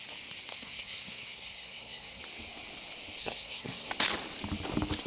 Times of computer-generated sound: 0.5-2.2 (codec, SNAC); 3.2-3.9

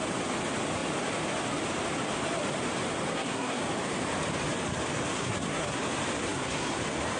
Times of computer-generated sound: 3.1-3.6 (codec, SNAC); 5.1-5.8; 6.2-6.8